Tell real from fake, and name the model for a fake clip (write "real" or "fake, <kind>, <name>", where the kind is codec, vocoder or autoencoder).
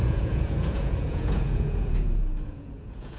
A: fake, vocoder, Vocos